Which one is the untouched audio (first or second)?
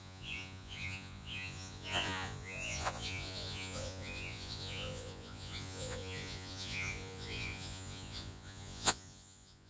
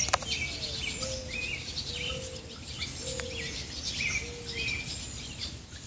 second